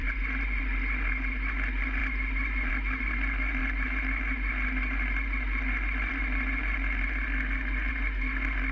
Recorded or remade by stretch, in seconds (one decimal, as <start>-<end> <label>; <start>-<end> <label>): 0.0-8.7 recorded